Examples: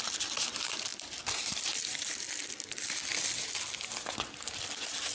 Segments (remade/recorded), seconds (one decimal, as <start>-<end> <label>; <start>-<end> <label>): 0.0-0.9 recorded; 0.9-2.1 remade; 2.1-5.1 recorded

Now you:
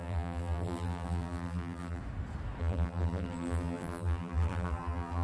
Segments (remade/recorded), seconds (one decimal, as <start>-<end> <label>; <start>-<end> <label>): 0.0-2.0 remade; 2.0-2.6 recorded; 2.6-5.2 remade

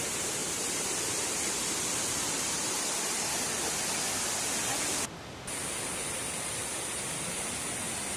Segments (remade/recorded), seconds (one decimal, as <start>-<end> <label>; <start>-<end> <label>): 0.0-0.4 recorded; 0.4-3.6 remade; 3.6-8.2 recorded

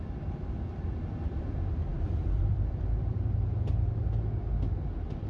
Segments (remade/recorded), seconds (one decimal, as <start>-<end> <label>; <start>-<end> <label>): 0.0-1.9 recorded; 1.9-3.1 remade; 3.1-5.3 recorded